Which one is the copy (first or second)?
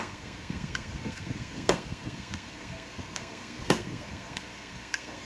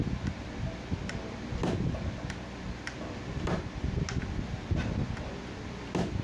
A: first